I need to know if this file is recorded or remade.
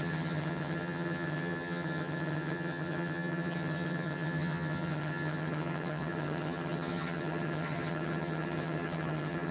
remade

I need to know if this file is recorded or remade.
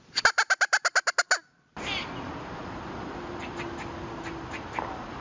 recorded